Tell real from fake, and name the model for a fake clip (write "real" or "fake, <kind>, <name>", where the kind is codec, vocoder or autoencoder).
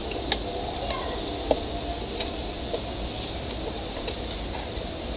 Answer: real